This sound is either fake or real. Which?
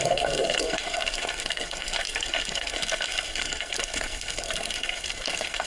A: fake